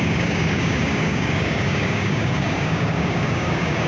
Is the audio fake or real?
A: fake